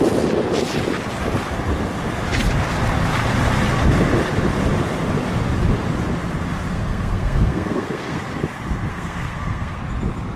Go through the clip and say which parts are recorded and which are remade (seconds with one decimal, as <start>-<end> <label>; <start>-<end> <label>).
0.0-6.7 recorded; 6.7-8.2 remade; 8.2-8.9 recorded; 8.9-9.8 remade; 9.8-10.4 recorded